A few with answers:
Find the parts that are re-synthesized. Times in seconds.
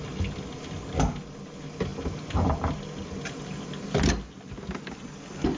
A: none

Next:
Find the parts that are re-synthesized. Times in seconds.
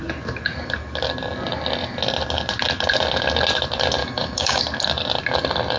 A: 4.0-4.6 (codec, DAC)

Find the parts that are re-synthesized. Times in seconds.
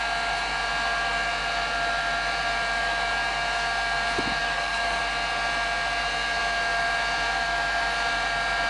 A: 4.4-5.0 (codec, DAC)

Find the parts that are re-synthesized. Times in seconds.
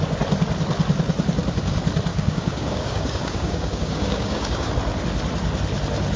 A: 2.1-4.7 (codec, DAC)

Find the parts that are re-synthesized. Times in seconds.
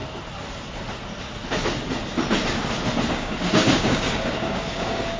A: 3.1-5.2 (codec, DAC)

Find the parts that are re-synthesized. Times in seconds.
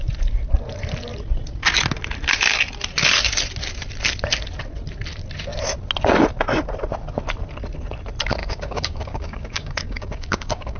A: 8.4-10.8 (codec, DAC)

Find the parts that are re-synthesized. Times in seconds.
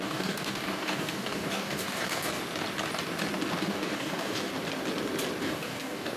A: 0.0-2.4 (codec, DAC); 3.6-4.5; 5.4-6.2